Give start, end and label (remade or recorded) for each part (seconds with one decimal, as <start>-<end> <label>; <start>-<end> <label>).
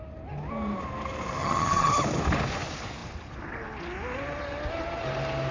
0.0-1.4 recorded; 1.4-1.9 remade; 1.9-5.5 recorded